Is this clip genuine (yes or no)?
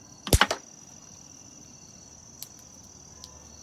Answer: yes